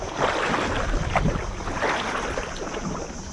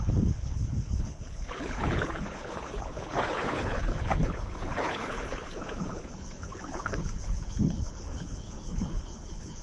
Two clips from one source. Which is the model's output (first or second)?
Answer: second